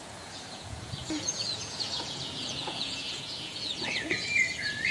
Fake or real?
fake